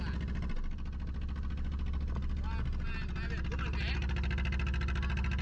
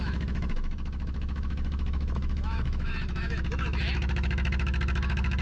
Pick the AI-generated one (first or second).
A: second